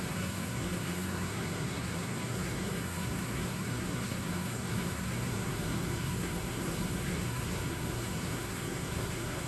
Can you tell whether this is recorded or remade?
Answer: remade